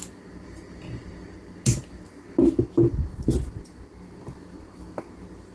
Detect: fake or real real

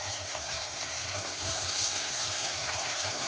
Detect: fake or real fake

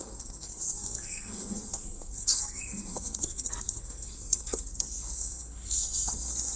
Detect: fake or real fake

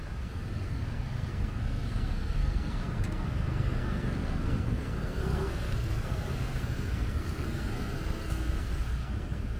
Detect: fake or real fake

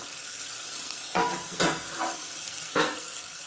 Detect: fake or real fake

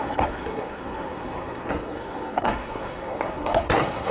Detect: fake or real fake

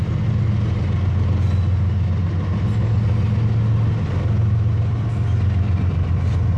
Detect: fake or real real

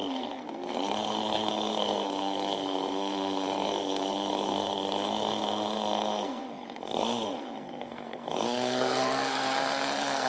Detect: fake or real fake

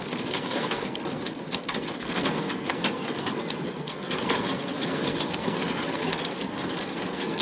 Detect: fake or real fake